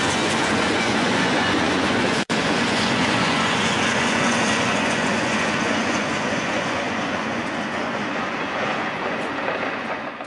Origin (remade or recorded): remade